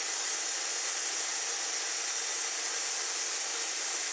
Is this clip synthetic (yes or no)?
no